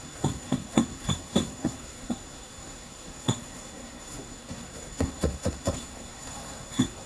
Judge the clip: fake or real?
fake